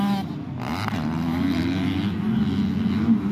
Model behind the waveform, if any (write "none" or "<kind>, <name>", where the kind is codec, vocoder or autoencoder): none